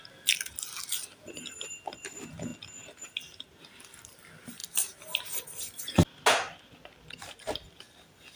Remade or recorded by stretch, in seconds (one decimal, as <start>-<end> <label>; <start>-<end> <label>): 0.0-8.4 recorded